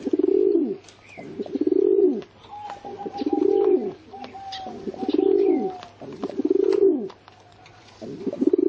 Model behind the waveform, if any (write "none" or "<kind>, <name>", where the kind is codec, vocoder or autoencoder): none